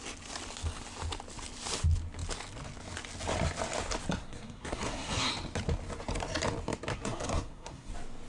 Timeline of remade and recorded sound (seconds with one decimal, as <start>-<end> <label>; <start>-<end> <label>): 0.0-4.2 recorded; 4.2-5.3 remade; 5.3-6.9 recorded; 6.9-7.9 remade; 7.9-8.3 recorded